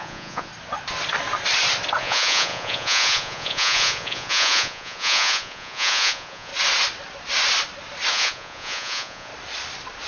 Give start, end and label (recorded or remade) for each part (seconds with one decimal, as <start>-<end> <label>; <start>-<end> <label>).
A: 0.0-0.5 remade; 0.5-2.0 recorded; 2.0-6.5 remade; 6.5-8.1 recorded; 8.1-9.3 remade; 9.3-10.1 recorded